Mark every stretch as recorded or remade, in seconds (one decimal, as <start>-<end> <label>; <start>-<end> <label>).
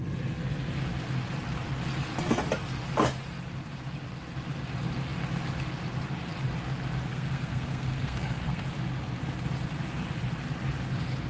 0.0-7.1 recorded; 7.1-8.7 remade; 8.7-11.3 recorded